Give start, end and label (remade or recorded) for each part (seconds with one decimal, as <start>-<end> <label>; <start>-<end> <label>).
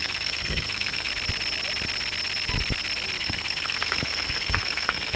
0.0-1.1 remade; 1.1-3.2 recorded; 3.2-5.2 remade